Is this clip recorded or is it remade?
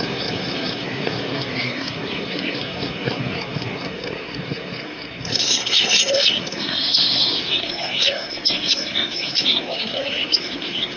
remade